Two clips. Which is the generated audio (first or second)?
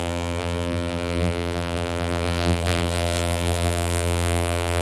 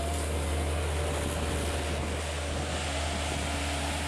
first